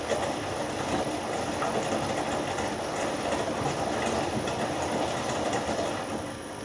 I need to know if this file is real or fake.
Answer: fake